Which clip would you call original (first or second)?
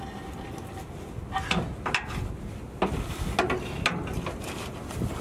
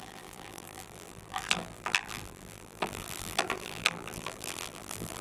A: first